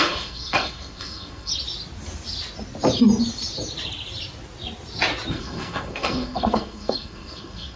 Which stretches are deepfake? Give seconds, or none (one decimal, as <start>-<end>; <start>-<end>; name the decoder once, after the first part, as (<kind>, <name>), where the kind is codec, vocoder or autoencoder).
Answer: 0.0-1.5 (codec, SNAC); 5.3-7.8